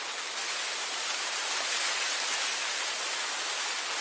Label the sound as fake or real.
real